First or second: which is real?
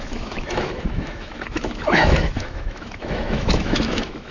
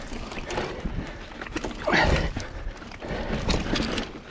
second